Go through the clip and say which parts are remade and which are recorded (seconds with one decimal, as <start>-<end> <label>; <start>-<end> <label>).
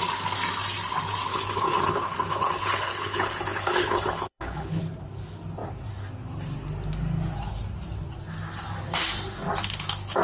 0.0-1.3 recorded; 1.3-4.8 remade; 4.8-10.2 recorded